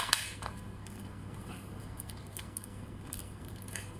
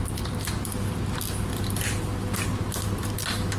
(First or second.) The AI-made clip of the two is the first